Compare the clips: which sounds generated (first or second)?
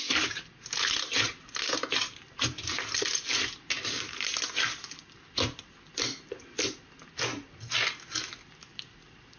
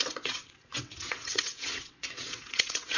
second